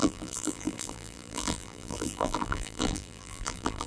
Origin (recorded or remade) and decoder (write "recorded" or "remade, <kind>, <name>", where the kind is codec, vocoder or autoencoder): remade, vocoder, BigVGAN v2